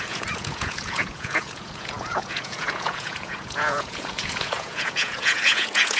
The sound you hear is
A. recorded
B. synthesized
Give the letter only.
B